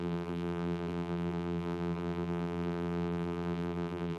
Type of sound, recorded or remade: remade